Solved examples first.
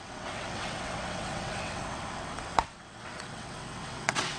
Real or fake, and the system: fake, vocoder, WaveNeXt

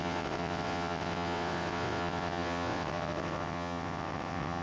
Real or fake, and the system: fake, vocoder, WaveNeXt